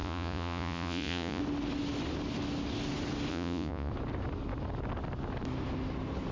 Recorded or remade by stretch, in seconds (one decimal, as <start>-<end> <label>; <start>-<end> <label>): 0.0-1.4 remade; 1.4-3.3 recorded; 3.3-3.9 remade; 3.9-6.3 recorded